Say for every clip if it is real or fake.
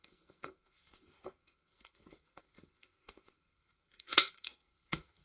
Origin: fake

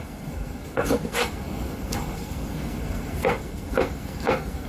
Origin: fake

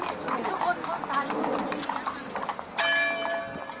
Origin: real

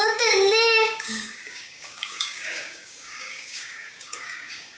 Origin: fake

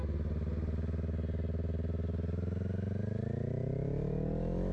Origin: real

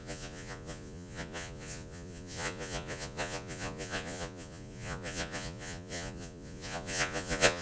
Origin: fake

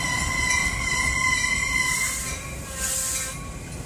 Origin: real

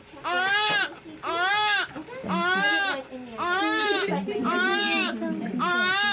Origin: real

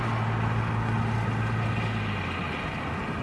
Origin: real